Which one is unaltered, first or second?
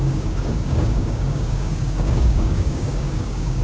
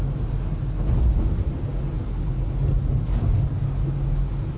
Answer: second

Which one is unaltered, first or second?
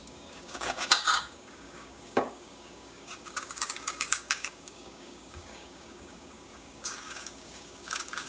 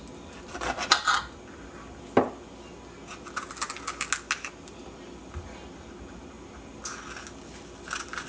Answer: second